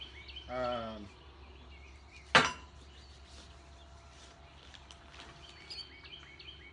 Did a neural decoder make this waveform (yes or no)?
no